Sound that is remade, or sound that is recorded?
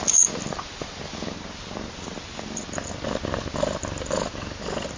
recorded